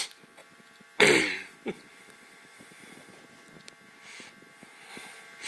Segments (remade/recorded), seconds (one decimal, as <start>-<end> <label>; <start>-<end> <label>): 0.0-0.4 recorded; 0.4-3.7 remade; 3.7-4.9 recorded; 4.9-5.5 remade